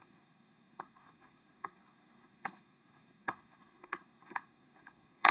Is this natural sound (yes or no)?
no